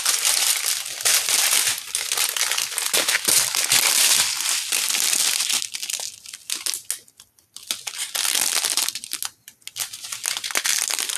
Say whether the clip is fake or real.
real